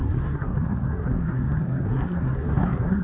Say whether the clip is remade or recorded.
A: remade